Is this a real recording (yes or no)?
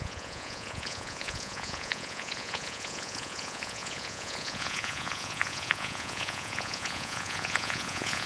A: no